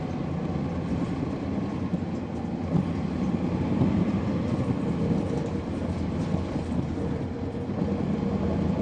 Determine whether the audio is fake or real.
real